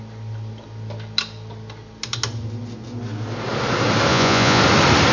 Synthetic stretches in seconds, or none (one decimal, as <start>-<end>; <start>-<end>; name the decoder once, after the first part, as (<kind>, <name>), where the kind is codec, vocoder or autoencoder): 4.1-4.6 (vocoder, Vocos)